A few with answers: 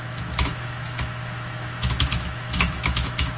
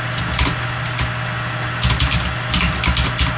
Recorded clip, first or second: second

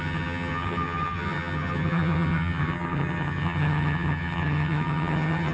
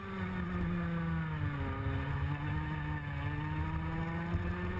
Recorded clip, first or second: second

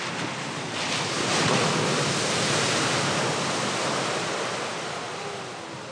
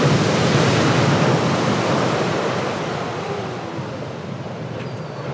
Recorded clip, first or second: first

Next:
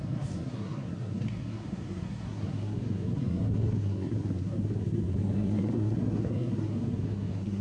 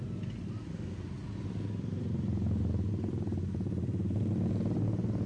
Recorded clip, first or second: second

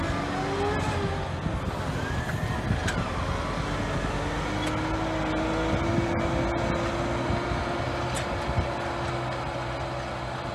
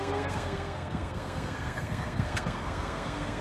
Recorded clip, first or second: first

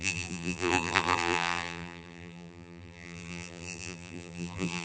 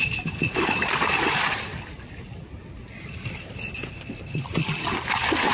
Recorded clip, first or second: second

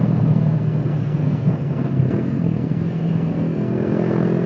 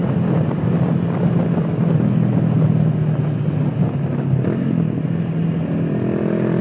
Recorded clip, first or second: second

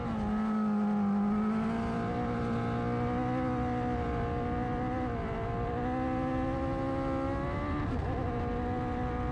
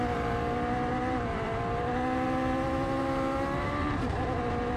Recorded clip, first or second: first